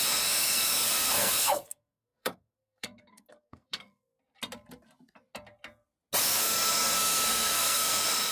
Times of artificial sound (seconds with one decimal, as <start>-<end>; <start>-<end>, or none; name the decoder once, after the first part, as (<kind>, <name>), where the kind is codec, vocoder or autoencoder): 0.0-4.1 (codec, SNAC); 6.2-8.3